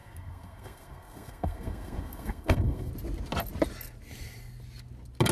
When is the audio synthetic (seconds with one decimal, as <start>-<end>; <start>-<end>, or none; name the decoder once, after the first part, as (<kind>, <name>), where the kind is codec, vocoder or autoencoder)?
0.0-2.9 (codec, SNAC)